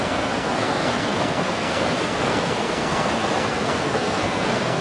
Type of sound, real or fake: fake